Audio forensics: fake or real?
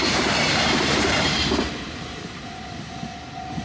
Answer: fake